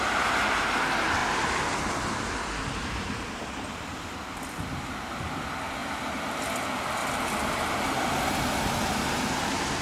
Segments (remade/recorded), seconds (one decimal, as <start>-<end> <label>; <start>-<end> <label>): 0.0-1.2 recorded; 1.2-4.0 remade; 4.0-5.8 recorded; 5.8-6.4 remade; 6.4-9.8 recorded